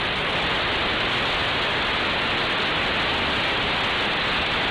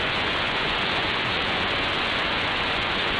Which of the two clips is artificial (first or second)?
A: second